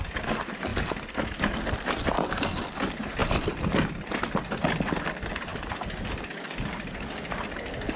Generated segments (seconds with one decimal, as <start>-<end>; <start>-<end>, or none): 0.7-2.6